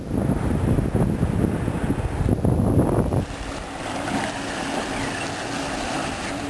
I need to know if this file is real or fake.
real